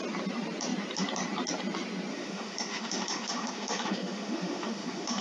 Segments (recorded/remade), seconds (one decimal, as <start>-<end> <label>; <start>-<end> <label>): 0.0-2.1 recorded; 2.1-5.2 remade